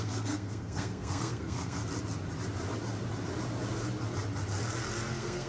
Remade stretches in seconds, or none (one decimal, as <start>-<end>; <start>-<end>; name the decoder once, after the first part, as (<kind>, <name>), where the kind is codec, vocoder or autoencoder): 0.0-1.8 (codec, SNAC); 5.1-5.5